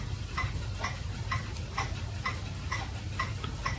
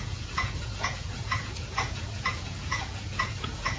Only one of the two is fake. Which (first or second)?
second